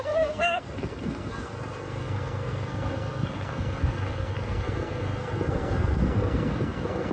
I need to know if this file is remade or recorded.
remade